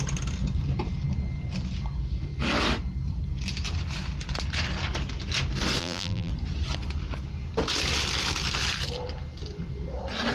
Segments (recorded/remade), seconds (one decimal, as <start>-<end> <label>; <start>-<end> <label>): 0.0-5.8 recorded; 5.8-6.3 remade; 6.3-10.3 recorded